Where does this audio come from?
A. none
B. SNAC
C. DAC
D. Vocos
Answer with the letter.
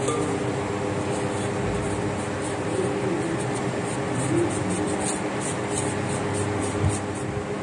A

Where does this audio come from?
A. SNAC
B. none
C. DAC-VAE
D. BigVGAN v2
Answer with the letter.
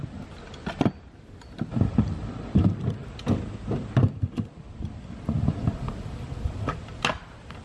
B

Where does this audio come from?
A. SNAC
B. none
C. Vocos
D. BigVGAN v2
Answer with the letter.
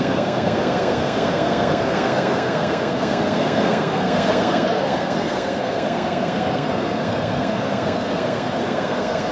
A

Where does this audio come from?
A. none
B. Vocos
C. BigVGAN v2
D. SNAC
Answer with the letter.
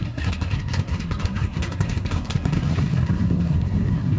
D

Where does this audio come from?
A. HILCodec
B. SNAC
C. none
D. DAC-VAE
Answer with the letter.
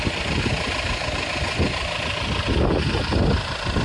C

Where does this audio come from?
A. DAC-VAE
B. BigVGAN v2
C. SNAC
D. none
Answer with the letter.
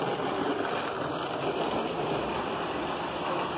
D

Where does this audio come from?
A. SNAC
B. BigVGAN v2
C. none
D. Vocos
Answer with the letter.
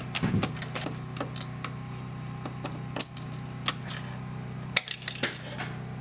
C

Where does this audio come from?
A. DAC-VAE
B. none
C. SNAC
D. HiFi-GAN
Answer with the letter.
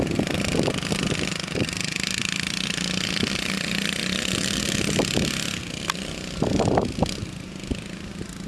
B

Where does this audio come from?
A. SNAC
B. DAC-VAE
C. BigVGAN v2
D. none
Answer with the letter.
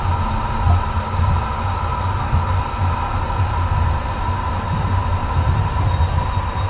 D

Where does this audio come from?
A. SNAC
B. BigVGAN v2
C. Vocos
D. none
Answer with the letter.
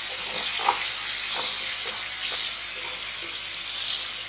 D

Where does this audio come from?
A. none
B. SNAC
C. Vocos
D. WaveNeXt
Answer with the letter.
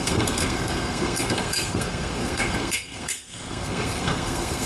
B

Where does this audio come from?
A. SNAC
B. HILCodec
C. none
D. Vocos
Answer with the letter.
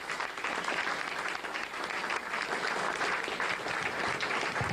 C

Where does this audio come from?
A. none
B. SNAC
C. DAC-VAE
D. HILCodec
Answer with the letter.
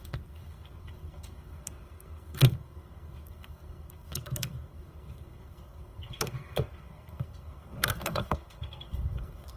B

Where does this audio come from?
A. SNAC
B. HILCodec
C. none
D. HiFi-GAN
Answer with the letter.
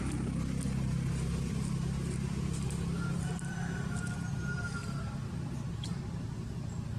C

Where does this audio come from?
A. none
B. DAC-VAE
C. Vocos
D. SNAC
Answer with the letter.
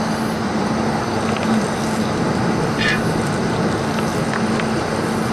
A